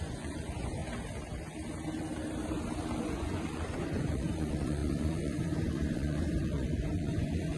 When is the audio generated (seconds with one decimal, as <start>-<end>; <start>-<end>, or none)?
0.0-0.8; 3.0-7.6